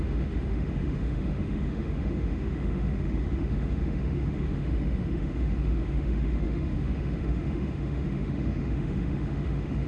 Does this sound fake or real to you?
fake